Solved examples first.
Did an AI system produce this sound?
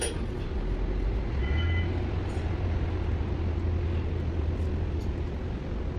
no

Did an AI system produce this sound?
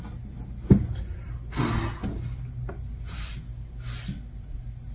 no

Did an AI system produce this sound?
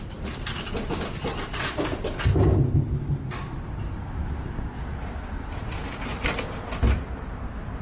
no